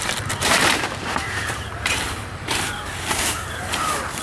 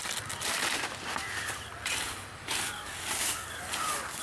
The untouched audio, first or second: second